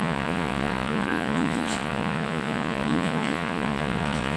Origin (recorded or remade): remade